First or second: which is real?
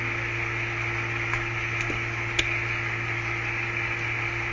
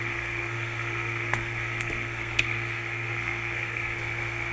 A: first